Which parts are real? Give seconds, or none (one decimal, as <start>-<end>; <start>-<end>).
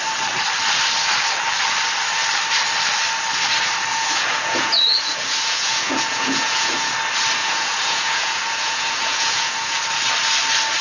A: 0.0-3.9; 6.9-7.4; 9.8-10.8